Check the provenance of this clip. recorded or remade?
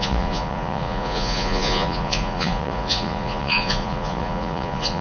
remade